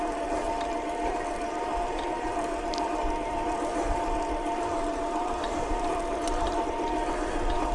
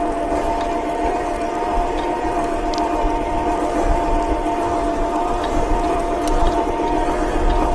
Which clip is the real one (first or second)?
second